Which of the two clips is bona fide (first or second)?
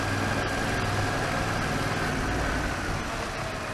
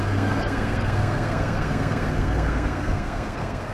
first